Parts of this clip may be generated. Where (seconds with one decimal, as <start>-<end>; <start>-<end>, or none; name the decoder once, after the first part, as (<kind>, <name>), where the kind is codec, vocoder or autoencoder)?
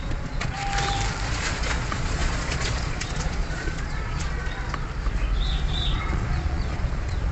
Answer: 0.0-0.6 (vocoder, Vocos); 1.3-4.5; 5.7-7.3